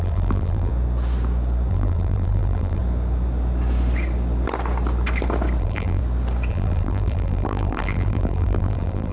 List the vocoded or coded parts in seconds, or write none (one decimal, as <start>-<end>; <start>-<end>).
0.0-0.7; 1.7-2.8; 5.6-6.0; 6.5-9.1